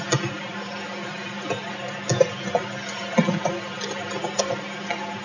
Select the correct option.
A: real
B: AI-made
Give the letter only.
A